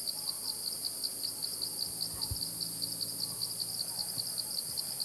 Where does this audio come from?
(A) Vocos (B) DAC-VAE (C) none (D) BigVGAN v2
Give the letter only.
C